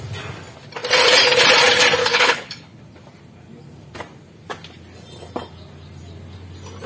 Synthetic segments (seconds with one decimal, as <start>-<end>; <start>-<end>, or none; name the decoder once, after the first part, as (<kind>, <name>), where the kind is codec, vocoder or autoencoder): 2.0-2.8 (codec, HILCodec)

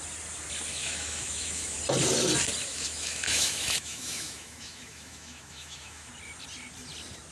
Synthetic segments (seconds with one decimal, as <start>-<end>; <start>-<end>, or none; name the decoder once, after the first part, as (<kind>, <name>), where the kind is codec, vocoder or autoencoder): 0.7-1.8 (autoencoder, DAC-VAE); 2.6-6.1

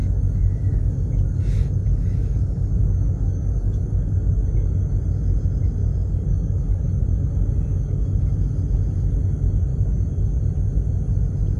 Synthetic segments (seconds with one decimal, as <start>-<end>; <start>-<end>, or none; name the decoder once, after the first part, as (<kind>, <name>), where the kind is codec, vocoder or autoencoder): 0.0-4.9 (codec, DAC); 5.8-7.3; 7.7-8.3; 9.7-10.4

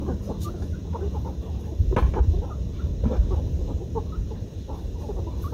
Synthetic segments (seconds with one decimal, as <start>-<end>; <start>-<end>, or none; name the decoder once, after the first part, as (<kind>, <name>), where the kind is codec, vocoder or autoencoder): none